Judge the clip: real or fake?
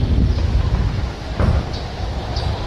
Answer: fake